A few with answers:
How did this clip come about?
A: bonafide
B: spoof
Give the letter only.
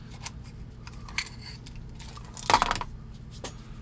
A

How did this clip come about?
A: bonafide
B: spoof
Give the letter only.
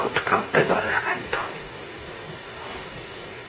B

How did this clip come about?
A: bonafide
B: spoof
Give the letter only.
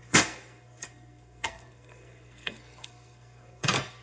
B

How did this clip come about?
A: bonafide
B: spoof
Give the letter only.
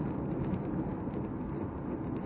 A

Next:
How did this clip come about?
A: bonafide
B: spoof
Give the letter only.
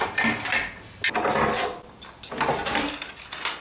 A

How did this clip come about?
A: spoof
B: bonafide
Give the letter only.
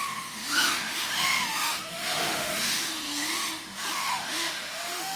A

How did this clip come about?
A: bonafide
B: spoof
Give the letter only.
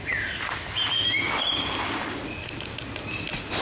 A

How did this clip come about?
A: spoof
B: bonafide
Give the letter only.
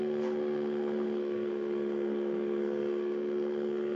A